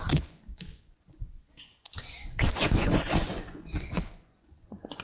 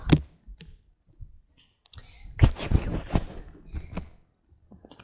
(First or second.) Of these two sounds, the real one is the second